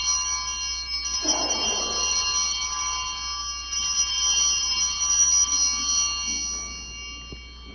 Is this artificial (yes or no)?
no